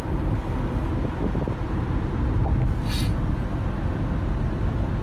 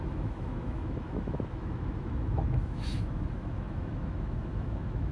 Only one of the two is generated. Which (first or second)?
second